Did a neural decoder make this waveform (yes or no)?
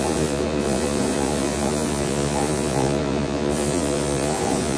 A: yes